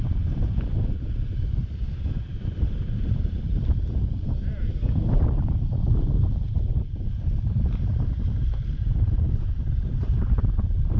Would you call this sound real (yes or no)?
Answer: no